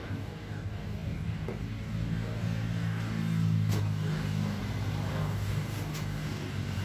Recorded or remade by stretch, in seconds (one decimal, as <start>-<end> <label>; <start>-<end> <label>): 0.0-4.6 remade; 4.6-5.1 recorded; 5.1-6.8 remade